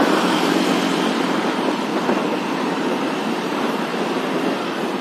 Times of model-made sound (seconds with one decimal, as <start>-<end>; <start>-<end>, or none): 0.0-1.9; 2.5-3.9